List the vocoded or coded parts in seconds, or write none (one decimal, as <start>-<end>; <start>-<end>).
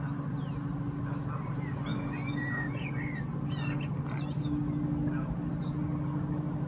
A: 1.9-2.9